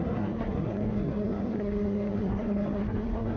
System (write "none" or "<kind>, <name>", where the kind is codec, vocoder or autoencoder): codec, SNAC